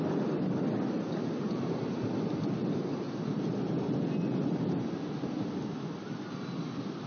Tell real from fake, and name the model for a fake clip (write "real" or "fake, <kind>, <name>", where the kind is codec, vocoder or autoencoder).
real